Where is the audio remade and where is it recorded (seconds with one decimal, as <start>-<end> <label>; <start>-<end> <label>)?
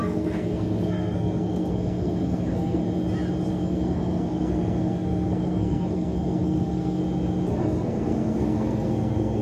0.0-2.8 remade; 2.8-3.5 recorded; 3.5-7.0 remade; 7.0-7.6 recorded; 7.6-9.4 remade